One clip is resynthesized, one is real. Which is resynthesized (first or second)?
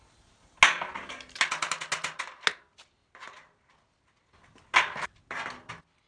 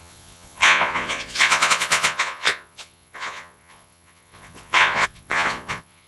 second